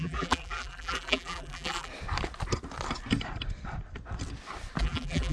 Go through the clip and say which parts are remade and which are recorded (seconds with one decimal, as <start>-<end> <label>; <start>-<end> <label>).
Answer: 0.0-1.9 remade; 1.9-4.8 recorded; 4.8-5.3 remade